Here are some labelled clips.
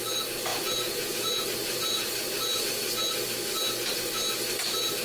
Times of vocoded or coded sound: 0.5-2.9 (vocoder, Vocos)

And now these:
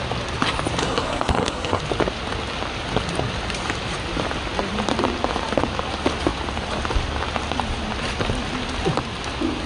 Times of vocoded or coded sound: 0.8-1.8 (codec, SNAC)

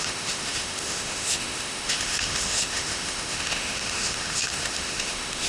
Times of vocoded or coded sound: 0.0-5.5 (autoencoder, DAC-VAE)

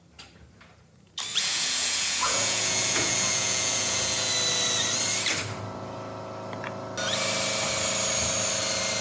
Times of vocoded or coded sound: 1.3-4.3 (vocoder, Vocos)

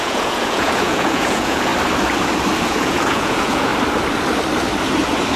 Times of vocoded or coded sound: 0.0-1.7 (vocoder, Vocos); 2.6-3.7